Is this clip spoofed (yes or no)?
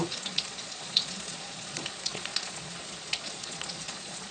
yes